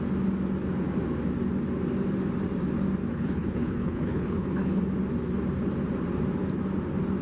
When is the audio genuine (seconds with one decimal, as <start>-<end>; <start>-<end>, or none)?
0.0-3.1; 4.8-7.2